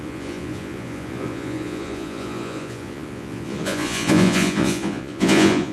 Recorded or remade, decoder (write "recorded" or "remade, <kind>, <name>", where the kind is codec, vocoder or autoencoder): remade, vocoder, Vocos